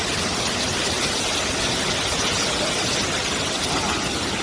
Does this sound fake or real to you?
real